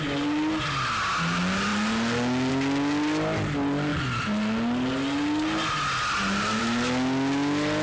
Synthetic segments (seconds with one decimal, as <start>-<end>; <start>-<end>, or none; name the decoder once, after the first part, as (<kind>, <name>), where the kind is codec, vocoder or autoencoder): none